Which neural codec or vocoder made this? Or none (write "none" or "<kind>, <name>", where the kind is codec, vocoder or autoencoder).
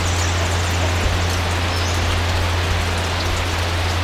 none